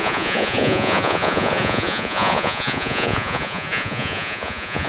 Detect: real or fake fake